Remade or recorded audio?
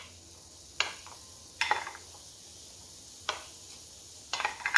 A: recorded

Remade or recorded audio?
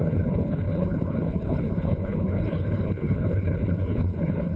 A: remade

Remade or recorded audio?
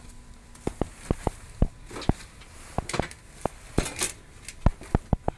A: recorded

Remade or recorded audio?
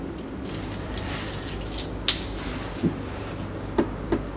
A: recorded